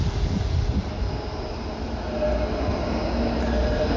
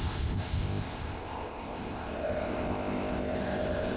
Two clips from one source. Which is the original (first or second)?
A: first